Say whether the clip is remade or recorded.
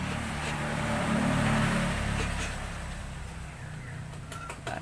recorded